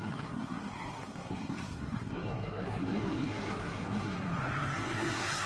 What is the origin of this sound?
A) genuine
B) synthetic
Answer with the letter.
B